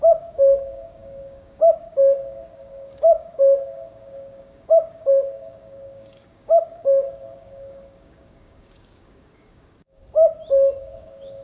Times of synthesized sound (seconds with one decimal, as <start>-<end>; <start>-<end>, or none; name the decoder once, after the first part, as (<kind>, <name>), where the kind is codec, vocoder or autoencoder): 0.0-10.0 (codec, DAC); 10.8-11.4

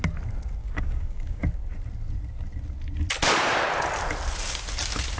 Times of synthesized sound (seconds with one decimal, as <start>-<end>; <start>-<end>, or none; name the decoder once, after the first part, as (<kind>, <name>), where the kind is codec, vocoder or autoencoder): 0.6-1.4 (codec, DAC)

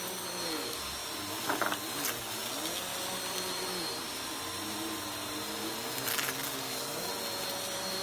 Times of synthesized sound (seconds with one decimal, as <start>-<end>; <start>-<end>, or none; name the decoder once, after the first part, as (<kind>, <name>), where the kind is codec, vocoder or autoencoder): 6.1-7.1 (codec, DAC)

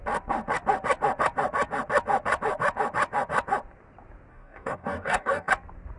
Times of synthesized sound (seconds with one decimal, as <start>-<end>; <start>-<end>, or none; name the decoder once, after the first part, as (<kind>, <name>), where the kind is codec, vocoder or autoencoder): 4.3-5.5 (codec, DAC)